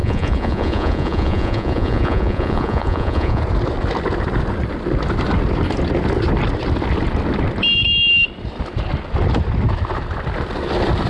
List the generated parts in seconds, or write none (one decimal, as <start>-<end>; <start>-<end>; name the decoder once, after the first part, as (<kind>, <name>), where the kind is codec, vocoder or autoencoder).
0.0-3.4 (vocoder, Vocos)